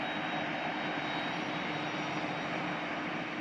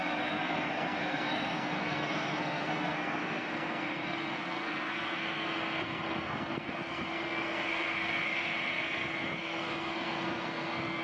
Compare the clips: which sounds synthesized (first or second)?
second